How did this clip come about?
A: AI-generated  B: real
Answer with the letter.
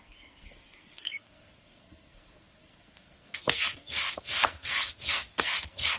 A